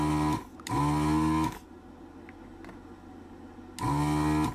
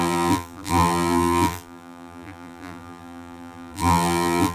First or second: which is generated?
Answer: second